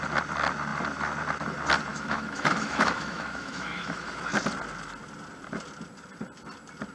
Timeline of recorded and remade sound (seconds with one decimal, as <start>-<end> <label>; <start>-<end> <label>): 0.0-1.9 recorded; 1.9-4.2 remade; 4.2-6.9 recorded